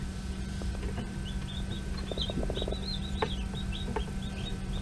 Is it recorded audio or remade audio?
recorded